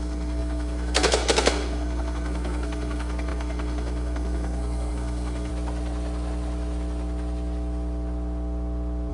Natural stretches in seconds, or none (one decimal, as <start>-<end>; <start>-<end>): 5.5-9.1